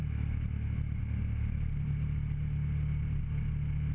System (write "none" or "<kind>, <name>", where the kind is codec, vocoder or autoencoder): none